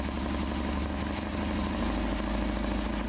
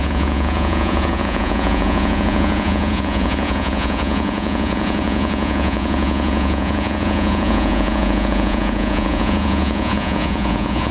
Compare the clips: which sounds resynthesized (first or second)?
second